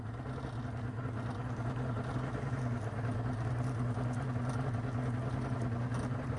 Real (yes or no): yes